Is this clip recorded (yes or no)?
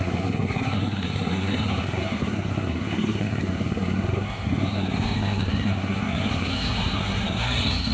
no